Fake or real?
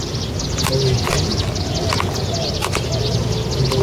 real